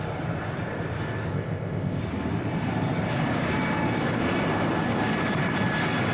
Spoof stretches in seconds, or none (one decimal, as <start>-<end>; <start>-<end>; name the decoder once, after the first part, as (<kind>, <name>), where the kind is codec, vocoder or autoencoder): 1.3-2.0 (codec, ZipCodec)